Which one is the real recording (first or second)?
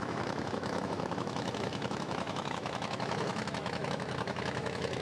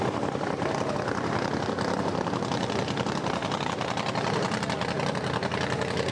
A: second